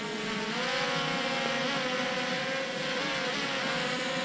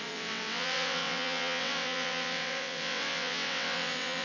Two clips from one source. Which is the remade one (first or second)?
second